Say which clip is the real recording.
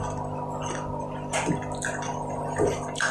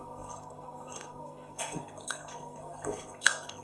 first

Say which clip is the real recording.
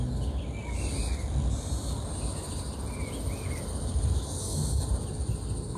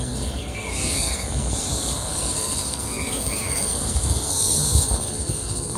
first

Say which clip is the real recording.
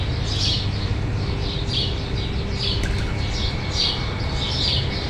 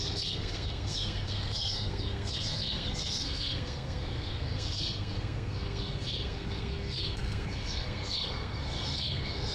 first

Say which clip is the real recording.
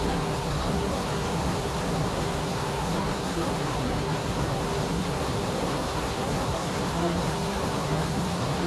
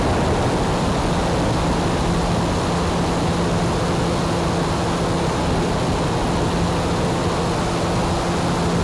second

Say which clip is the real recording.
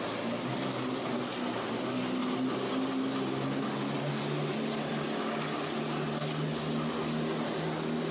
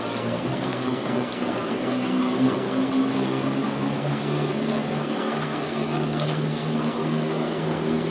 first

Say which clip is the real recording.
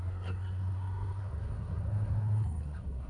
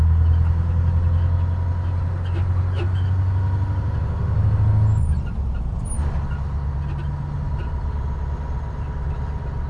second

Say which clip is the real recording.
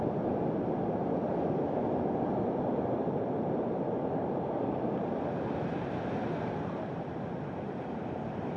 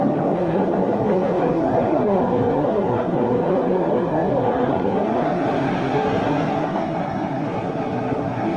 first